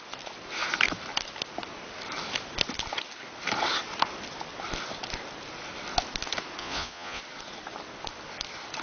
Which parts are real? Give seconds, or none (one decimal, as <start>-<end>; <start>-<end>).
0.0-6.6; 7.2-8.8